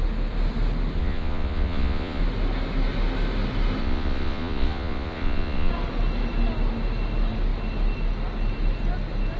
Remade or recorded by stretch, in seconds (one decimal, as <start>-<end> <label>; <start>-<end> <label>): 0.0-1.0 recorded; 1.0-2.2 remade; 2.2-3.8 recorded; 3.8-5.7 remade; 5.7-9.4 recorded